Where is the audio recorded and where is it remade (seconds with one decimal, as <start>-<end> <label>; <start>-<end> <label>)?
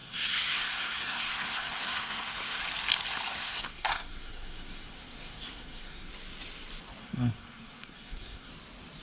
0.0-2.6 remade; 2.6-3.3 recorded; 3.3-6.1 remade; 6.1-7.0 recorded; 7.0-8.5 remade; 8.5-9.0 recorded